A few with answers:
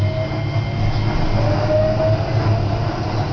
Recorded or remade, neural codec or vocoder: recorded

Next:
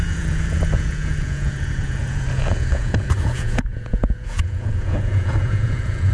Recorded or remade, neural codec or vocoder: remade, vocoder, Vocos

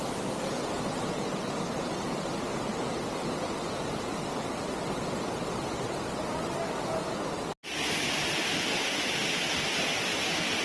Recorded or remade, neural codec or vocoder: recorded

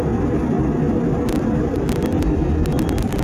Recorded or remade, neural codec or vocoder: recorded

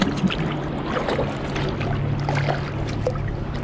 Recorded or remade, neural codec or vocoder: recorded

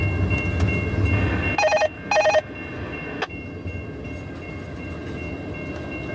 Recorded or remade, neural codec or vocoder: recorded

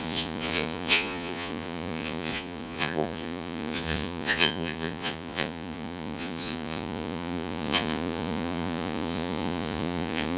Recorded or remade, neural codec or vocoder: remade, vocoder, Vocos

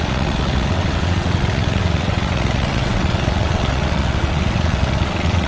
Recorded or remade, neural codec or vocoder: remade, vocoder, WaveNeXt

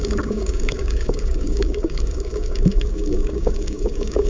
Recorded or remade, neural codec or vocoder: remade, codec, DAC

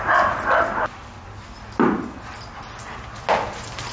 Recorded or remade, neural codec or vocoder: recorded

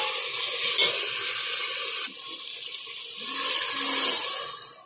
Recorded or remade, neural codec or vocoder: recorded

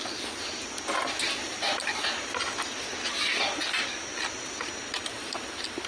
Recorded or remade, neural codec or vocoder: recorded